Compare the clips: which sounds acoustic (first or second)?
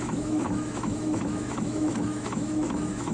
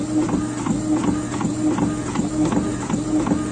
second